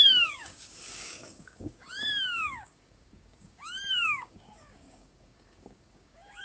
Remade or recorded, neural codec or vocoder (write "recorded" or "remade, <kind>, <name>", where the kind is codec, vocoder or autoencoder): remade, codec, DAC